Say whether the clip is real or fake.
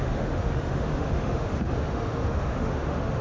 fake